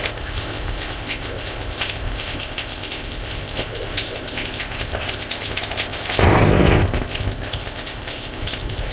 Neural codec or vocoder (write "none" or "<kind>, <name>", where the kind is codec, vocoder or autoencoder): codec, ZipCodec